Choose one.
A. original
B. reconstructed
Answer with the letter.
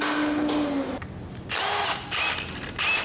A